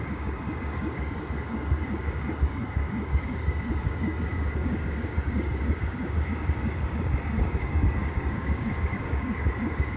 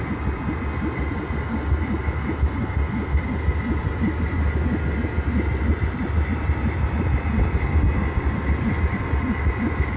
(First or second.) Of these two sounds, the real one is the second